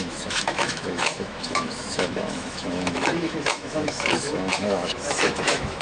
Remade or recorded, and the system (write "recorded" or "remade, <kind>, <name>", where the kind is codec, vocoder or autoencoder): remade, autoencoder, DAC-VAE